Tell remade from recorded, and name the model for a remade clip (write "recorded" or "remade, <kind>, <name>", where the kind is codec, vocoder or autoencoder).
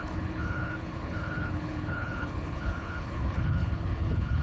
remade, codec, HILCodec